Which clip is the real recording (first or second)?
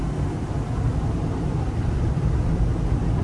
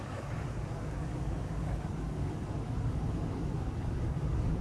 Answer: first